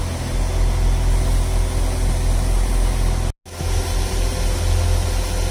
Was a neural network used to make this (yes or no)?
no